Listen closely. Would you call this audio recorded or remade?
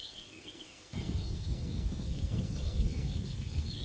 remade